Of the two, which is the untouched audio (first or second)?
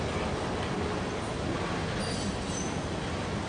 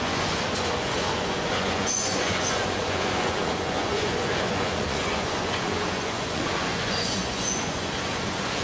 first